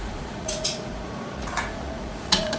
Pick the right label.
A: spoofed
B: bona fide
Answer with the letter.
A